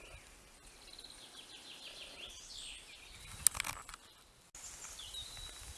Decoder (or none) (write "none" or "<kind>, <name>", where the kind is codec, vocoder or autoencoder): none